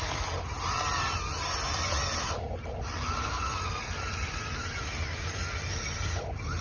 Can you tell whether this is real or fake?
real